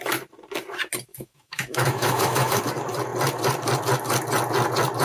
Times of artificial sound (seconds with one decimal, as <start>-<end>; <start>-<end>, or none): 1.1-2.6